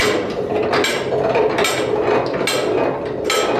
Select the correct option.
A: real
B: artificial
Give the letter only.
A